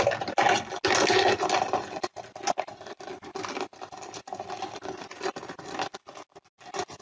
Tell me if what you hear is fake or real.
real